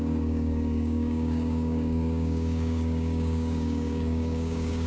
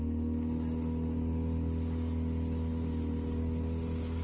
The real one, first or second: second